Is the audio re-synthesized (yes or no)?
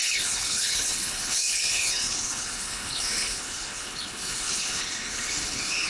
yes